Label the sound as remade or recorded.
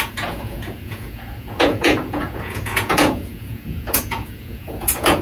remade